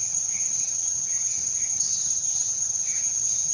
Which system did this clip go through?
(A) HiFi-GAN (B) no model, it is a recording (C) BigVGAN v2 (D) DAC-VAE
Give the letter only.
A